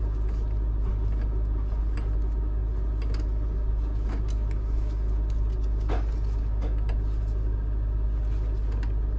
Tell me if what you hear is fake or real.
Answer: real